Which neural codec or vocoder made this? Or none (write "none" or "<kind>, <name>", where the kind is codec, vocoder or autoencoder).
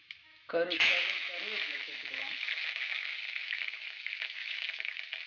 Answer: autoencoder, DAC-VAE